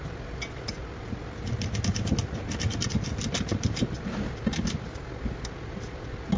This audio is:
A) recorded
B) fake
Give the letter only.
A